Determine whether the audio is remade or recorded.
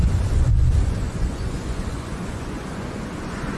remade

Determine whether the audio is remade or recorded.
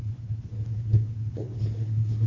remade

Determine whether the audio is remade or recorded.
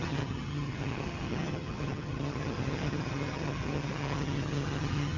remade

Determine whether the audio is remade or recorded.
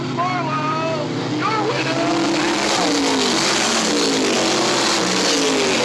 recorded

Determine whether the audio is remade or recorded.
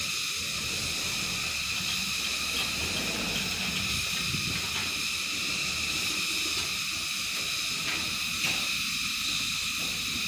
recorded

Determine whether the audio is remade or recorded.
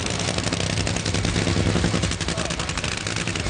recorded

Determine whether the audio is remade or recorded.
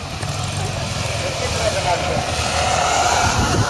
recorded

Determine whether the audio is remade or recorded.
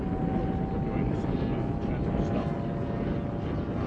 recorded